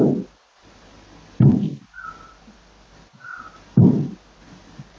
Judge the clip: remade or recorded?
recorded